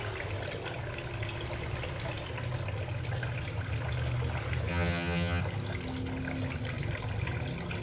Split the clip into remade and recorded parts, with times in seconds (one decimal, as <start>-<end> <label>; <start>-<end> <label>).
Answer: 0.0-4.7 recorded; 4.7-5.4 remade; 5.4-7.8 recorded